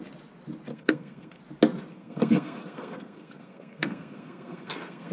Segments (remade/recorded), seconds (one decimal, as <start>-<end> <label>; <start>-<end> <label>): 0.0-0.7 recorded; 0.7-1.4 remade; 1.4-1.9 recorded; 1.9-5.1 remade